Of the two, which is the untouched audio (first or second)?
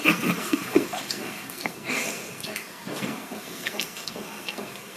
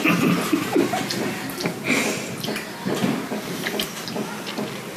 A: second